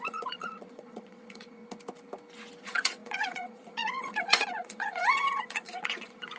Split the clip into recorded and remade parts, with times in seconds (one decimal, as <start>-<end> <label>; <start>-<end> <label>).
0.0-1.6 remade; 1.6-2.6 recorded; 2.6-6.4 remade